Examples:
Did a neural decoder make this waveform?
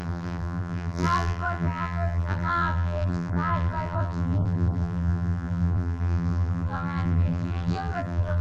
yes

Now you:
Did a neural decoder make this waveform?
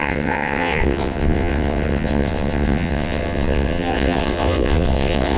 yes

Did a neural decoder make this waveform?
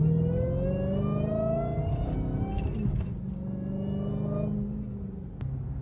no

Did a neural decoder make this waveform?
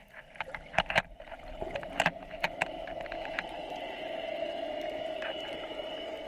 no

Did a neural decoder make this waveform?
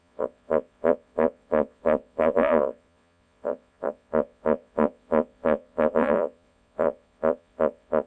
yes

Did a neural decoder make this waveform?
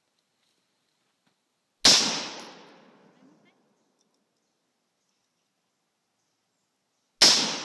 no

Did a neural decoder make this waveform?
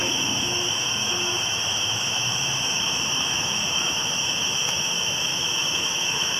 yes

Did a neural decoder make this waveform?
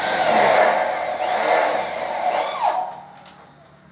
no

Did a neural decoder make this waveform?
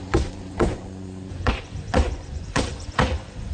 yes